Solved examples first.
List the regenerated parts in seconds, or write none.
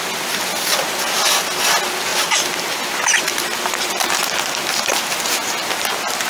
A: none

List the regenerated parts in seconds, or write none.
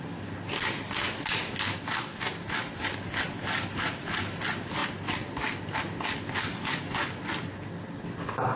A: none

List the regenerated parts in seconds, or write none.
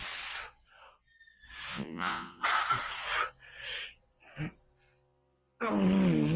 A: 1.7-2.4 (vocoder, Vocos)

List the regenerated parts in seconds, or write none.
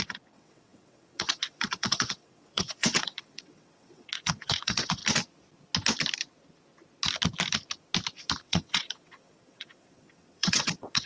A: 0.0-5.0 (vocoder, WaveNeXt); 8.4-11.1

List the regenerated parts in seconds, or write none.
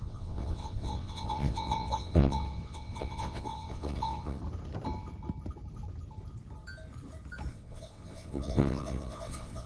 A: 0.0-4.4 (vocoder, WaveNeXt); 7.5-9.7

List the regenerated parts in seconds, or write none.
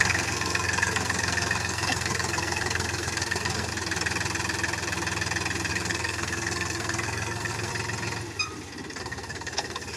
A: 0.0-3.7 (codec, SNAC); 5.7-7.7; 9.0-10.0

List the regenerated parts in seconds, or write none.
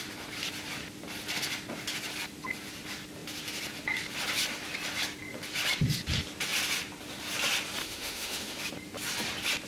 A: 7.8-8.6 (autoencoder, DAC-VAE)